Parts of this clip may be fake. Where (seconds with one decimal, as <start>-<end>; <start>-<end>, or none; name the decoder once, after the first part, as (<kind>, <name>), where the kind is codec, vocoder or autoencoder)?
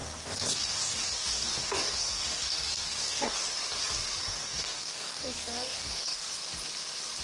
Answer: 0.0-3.4 (codec, DAC); 4.2-6.3